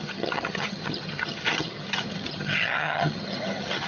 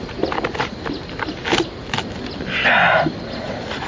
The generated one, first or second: first